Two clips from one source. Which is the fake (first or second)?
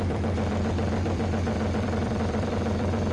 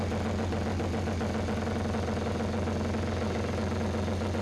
first